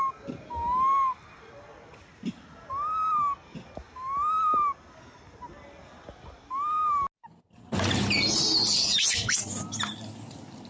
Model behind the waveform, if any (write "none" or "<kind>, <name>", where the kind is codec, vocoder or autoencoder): none